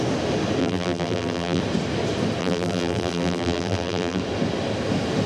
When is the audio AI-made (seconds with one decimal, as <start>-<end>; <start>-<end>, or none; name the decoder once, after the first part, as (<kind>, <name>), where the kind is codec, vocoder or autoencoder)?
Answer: 0.6-1.6 (vocoder, BigVGAN v2); 2.4-4.2